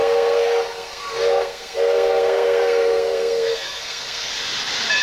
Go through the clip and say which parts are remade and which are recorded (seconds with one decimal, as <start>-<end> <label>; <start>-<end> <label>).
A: 0.0-4.3 remade; 4.3-5.0 recorded